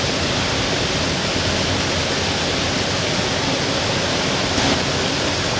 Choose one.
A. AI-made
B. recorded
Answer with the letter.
B